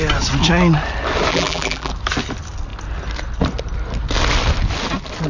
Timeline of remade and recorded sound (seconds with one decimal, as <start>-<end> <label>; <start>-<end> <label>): 0.0-1.3 recorded; 1.3-1.9 remade; 1.9-5.3 recorded